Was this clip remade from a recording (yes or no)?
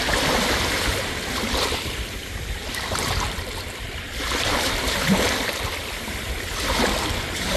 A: yes